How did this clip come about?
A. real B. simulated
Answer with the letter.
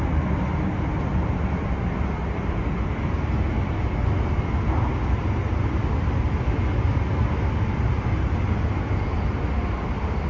A